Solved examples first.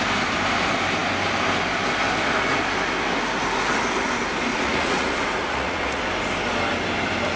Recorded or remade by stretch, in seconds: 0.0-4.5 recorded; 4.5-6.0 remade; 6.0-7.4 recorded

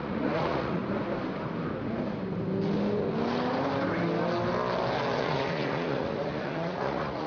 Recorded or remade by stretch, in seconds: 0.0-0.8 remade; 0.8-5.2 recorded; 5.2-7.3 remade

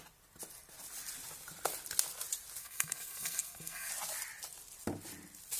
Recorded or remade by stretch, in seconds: 0.0-2.6 recorded; 2.6-3.9 remade; 3.9-5.6 recorded

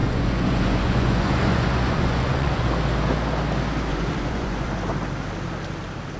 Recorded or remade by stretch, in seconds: 0.0-2.7 remade; 2.7-3.9 recorded; 3.9-4.7 remade; 4.7-6.2 recorded

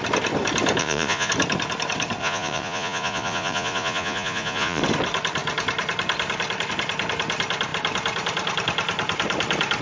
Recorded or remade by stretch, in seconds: 0.0-0.8 recorded; 0.8-1.3 remade; 1.3-2.2 recorded; 2.2-4.8 remade; 4.8-9.8 recorded

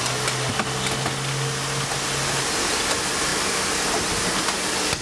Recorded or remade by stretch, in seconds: 0.0-5.0 recorded

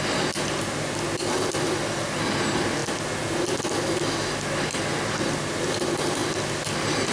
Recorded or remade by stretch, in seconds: 0.0-7.1 recorded

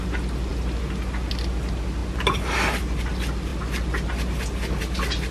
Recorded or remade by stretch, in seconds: 0.0-5.3 recorded